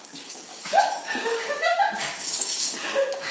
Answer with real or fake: fake